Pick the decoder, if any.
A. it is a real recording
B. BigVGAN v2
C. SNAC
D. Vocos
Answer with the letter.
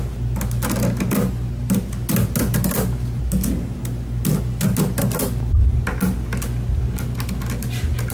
A